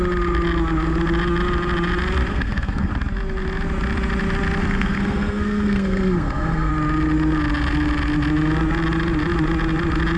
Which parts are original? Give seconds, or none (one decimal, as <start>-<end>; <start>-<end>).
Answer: 0.0-2.3; 2.9-4.6; 6.7-10.2

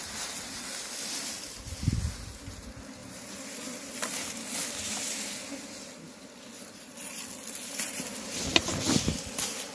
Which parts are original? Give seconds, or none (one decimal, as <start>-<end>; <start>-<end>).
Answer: 0.0-9.7

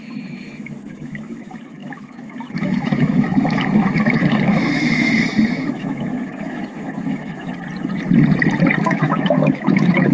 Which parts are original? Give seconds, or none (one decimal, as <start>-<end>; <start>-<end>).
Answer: 7.5-8.8

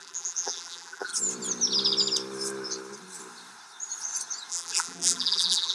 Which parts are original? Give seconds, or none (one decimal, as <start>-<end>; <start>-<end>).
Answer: 1.1-4.5

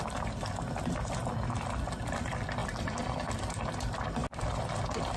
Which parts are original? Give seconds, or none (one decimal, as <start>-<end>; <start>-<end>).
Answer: 0.0-2.6; 3.4-4.2; 4.8-5.2